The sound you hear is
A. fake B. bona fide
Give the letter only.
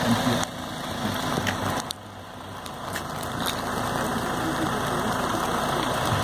B